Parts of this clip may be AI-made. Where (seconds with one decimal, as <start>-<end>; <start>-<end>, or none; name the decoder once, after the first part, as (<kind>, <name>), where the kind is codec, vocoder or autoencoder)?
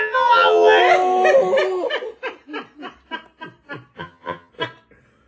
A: 0.0-0.8 (vocoder, HiFi-GAN); 4.0-4.5